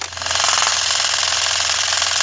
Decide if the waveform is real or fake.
real